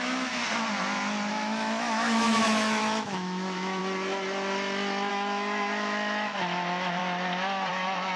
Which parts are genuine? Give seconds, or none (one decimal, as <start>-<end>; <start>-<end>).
0.4-1.3; 3.8-5.1; 7.0-7.7